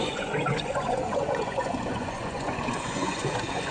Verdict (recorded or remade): remade